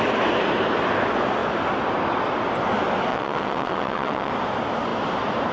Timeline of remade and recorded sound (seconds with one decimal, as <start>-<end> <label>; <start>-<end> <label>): 0.0-3.1 recorded; 3.1-4.3 remade; 4.3-5.5 recorded